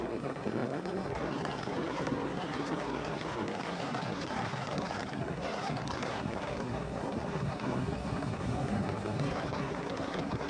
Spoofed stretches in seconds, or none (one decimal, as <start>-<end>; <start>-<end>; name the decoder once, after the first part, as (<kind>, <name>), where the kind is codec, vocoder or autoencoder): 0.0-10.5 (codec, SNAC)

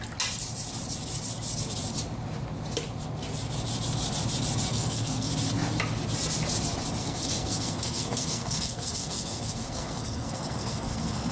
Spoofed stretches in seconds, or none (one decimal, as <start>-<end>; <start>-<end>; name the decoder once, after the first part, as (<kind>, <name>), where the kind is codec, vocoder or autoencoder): 4.7-5.3 (codec, SNAC); 7.0-11.3

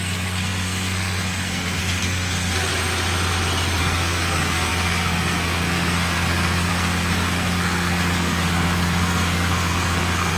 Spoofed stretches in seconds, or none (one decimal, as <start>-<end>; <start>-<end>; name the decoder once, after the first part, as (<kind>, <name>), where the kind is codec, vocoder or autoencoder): 0.0-2.7 (codec, SNAC); 3.8-10.4

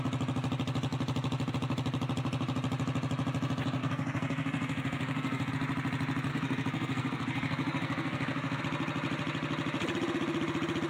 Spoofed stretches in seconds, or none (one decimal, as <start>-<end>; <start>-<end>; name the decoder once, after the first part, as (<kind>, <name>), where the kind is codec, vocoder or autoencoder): 3.8-5.5 (codec, SNAC); 6.3-8.6